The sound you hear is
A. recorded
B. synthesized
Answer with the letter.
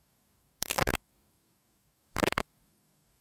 B